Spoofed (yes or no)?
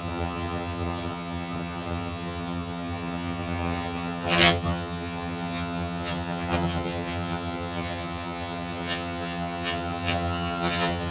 yes